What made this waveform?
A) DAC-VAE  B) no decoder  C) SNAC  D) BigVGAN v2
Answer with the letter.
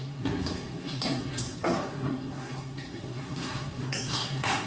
C